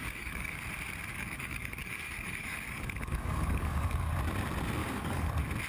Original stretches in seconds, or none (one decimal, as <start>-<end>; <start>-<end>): 0.6-1.1; 4.1-4.8; 5.3-5.7